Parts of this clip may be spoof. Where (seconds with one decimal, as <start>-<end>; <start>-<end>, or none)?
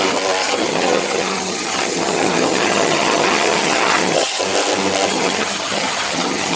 0.4-4.4; 5.1-6.6